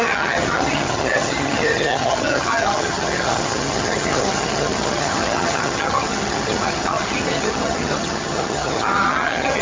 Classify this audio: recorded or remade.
remade